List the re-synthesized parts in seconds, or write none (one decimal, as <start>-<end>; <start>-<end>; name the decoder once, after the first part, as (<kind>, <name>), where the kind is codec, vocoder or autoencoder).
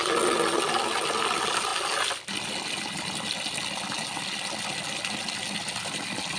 none